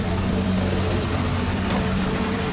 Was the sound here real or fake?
fake